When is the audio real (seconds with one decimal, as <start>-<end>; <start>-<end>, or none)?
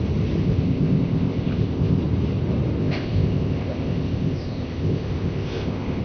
0.0-0.4; 2.0-2.8